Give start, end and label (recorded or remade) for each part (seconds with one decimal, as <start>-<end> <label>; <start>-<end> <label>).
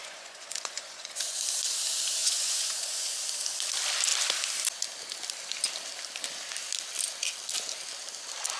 0.0-1.4 remade; 1.4-2.2 recorded; 2.2-3.1 remade; 3.1-8.6 recorded